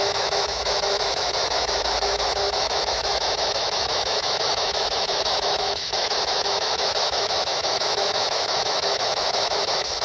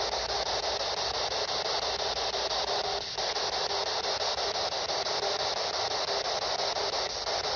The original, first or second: second